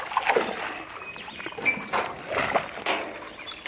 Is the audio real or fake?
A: real